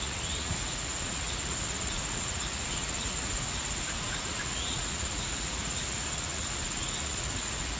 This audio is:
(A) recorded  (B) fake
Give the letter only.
B